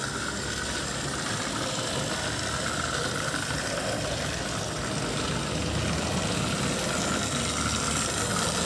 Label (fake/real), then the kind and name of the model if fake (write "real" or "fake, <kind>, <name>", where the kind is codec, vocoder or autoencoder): real